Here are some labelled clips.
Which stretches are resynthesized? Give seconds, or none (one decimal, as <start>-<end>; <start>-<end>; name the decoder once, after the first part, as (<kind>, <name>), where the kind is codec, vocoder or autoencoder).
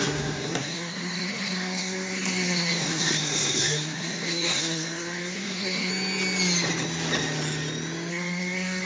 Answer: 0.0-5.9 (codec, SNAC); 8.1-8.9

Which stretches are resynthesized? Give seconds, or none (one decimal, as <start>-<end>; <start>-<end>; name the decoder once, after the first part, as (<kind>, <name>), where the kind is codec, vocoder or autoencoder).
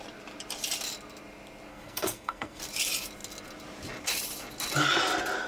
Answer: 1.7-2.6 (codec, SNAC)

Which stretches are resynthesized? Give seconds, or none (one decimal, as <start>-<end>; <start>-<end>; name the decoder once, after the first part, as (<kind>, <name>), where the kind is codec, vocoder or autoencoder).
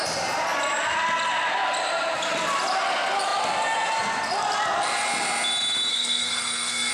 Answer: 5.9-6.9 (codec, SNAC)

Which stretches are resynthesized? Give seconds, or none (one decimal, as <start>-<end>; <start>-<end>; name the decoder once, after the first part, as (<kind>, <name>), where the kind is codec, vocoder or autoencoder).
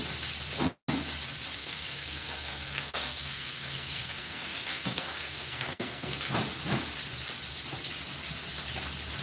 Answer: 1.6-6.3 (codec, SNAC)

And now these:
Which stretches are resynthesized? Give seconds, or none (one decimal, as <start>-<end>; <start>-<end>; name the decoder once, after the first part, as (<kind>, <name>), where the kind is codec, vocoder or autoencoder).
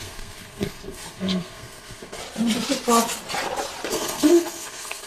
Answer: 0.0-2.2 (codec, SNAC); 3.9-5.1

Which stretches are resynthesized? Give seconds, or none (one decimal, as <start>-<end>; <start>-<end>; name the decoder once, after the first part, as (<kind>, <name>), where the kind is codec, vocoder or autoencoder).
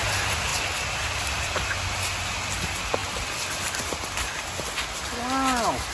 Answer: none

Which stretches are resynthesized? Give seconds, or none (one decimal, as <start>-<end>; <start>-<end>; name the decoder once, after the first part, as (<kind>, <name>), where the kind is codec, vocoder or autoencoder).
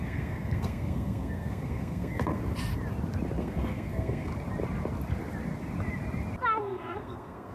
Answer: 0.0-2.4 (codec, SNAC); 3.4-4.3; 6.6-7.5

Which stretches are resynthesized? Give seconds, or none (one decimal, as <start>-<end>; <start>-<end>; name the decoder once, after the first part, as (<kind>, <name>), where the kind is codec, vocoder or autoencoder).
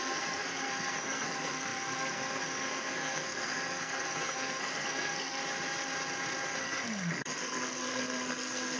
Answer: 0.0-5.4 (codec, SNAC); 6.6-8.8